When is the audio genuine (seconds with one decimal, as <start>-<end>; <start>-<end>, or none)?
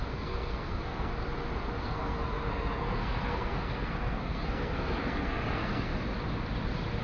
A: 1.1-1.8; 5.9-7.0